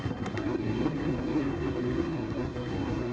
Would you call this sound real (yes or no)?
no